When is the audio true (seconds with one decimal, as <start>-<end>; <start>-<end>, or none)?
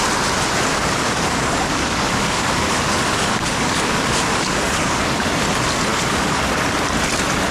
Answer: 0.0-0.7; 5.0-5.9; 6.4-7.5